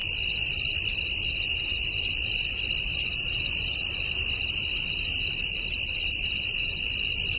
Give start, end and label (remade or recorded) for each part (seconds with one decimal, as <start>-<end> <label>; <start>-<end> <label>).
0.0-2.9 recorded; 2.9-3.9 remade; 3.9-7.4 recorded